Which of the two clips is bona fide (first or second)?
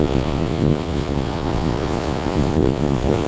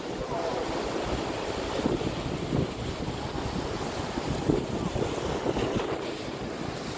second